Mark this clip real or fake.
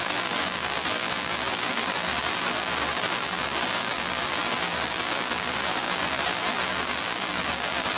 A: fake